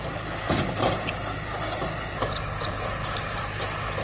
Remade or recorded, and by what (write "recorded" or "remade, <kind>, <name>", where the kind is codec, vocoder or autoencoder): recorded